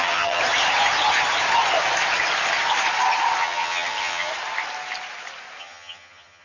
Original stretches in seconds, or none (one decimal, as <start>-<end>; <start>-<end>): 0.4-3.4; 4.3-5.6